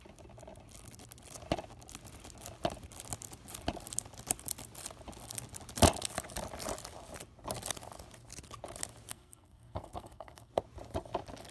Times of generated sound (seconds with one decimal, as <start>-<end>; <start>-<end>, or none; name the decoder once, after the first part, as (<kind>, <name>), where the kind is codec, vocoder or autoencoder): 9.1-10.5 (codec, SNAC)